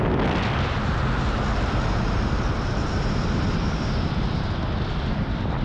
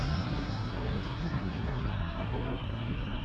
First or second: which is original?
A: first